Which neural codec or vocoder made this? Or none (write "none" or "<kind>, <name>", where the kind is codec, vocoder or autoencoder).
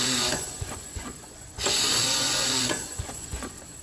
vocoder, Vocos